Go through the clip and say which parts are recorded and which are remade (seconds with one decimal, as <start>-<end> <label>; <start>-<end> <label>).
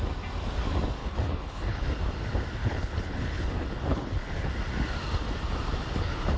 0.0-1.0 recorded; 1.0-2.0 remade; 2.0-2.6 recorded; 2.6-4.5 remade; 4.5-5.9 recorded; 5.9-6.4 remade